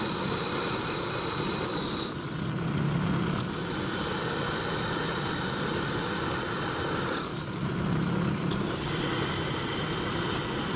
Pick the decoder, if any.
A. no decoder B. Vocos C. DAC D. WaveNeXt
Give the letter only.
A